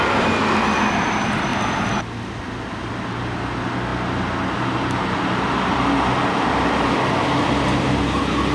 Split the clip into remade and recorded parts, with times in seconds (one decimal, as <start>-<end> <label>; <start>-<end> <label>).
0.0-8.5 recorded